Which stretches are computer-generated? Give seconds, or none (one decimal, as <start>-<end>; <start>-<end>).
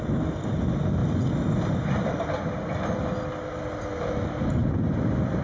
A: none